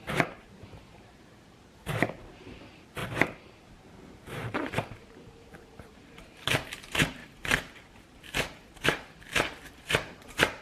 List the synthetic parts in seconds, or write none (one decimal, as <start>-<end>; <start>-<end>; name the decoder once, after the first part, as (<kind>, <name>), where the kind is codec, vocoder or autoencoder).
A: 0.0-3.0 (vocoder, BigVGAN v2); 3.7-10.6